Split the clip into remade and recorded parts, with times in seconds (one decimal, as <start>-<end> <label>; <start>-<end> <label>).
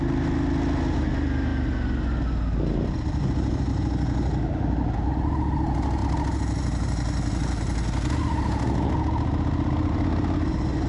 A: 0.0-10.9 recorded